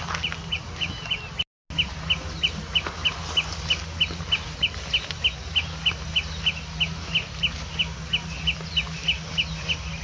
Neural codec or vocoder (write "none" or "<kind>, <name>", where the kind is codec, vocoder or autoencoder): none